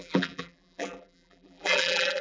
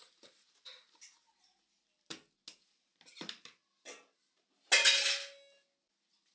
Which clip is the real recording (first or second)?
second